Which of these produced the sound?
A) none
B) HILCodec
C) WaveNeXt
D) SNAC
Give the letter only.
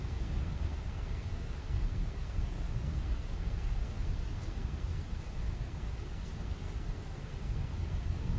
D